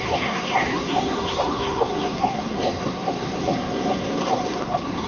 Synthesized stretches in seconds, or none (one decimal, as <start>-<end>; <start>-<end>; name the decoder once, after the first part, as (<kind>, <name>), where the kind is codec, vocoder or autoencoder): 0.0-5.1 (codec, SNAC)